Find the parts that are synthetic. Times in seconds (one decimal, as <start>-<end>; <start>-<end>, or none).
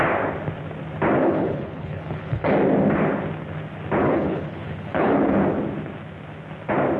1.2-2.5; 4.0-5.2